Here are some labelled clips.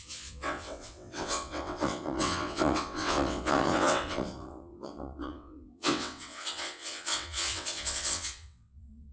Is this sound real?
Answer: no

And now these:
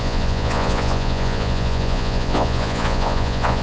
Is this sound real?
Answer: no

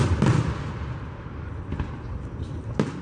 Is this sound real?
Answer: yes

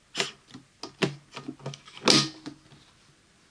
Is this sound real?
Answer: yes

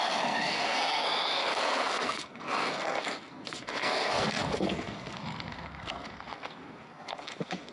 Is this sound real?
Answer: no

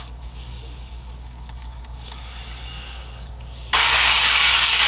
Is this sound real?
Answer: no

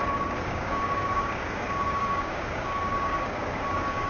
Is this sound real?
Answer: no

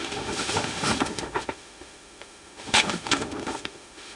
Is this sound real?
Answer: no